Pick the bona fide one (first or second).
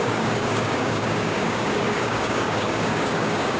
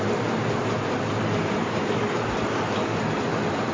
second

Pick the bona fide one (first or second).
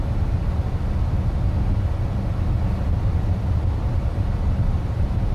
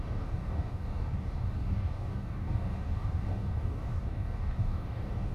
first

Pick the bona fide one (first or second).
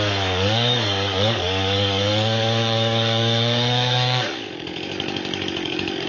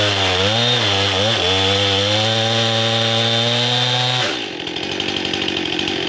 second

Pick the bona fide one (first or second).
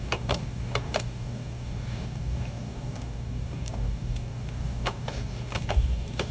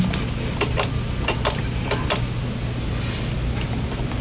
second